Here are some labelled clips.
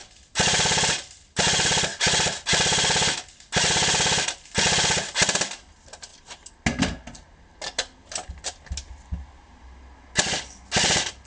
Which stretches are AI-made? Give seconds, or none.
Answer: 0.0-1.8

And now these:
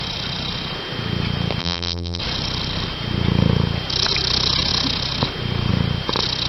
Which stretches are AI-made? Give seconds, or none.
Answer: 1.6-2.2

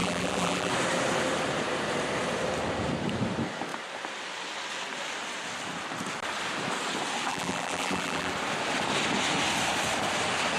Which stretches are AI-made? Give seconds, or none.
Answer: 0.0-0.7; 7.3-8.3

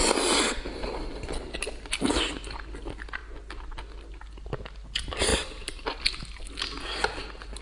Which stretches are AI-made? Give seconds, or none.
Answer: 5.3-6.0

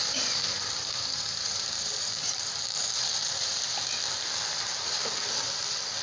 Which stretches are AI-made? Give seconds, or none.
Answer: 0.0-3.6; 4.7-5.5

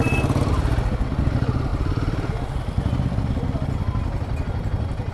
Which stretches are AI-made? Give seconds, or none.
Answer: 1.7-5.1

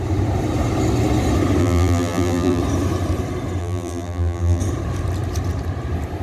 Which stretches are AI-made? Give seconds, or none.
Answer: 1.6-2.6; 3.6-4.6

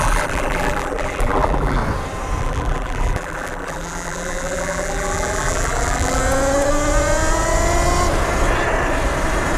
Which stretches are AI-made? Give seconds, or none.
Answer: 0.0-1.8; 2.4-6.2